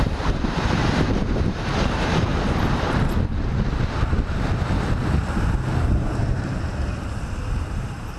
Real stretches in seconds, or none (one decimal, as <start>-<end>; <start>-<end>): 2.3-6.2